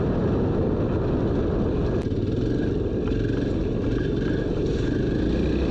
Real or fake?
real